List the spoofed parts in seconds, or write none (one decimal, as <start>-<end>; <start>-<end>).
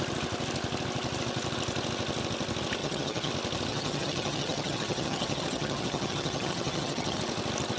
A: 2.8-3.3; 3.7-7.2